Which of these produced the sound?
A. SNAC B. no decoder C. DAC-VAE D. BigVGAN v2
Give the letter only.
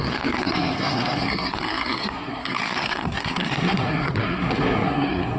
A